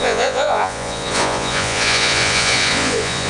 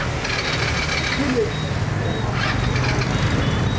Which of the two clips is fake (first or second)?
first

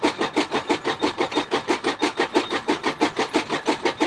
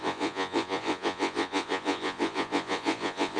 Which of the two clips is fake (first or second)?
second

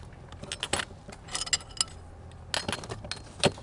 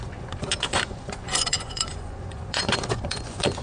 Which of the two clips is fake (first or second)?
second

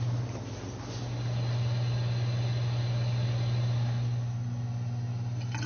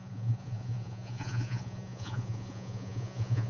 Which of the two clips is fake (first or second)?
second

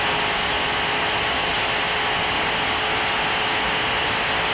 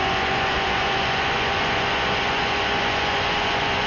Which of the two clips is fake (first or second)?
second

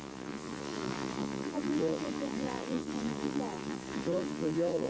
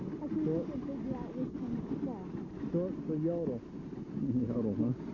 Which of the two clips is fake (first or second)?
first